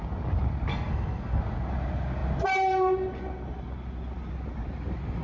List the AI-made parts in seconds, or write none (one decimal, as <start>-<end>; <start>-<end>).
0.7-1.4